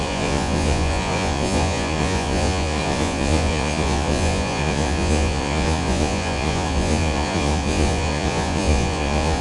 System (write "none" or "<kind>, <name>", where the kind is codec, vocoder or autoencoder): vocoder, Vocos